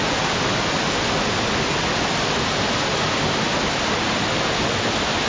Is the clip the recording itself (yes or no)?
yes